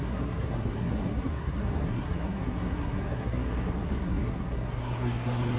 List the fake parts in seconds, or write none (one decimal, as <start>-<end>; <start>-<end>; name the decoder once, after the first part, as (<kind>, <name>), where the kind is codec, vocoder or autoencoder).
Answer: 0.0-5.6 (codec, SNAC)